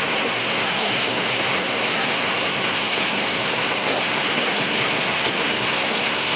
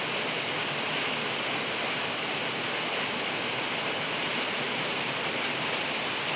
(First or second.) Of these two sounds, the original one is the second